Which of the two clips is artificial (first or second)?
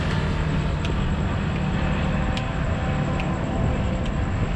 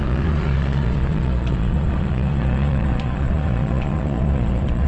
second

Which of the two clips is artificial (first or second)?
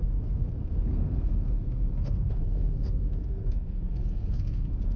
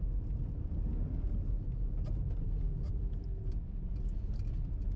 first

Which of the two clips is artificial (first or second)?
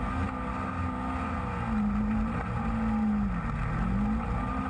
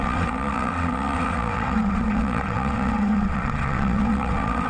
second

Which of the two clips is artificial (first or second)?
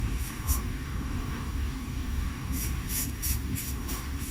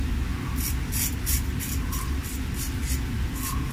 first